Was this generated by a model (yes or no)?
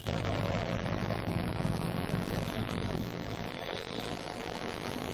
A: yes